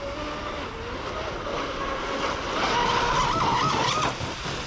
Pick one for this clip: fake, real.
real